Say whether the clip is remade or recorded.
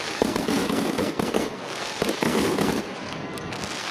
remade